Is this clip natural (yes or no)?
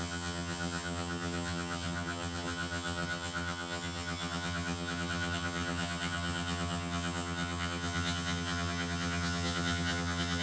no